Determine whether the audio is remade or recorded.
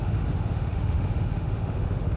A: remade